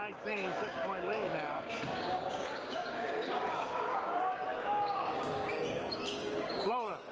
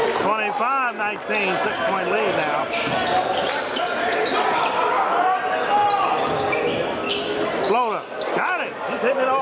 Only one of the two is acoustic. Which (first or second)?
second